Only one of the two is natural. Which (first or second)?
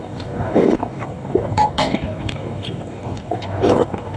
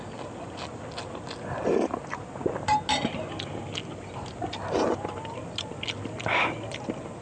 second